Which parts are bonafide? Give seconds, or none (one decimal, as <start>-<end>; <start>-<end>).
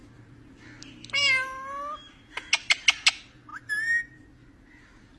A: 0.0-5.2